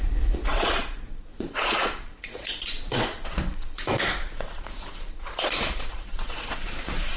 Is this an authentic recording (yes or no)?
no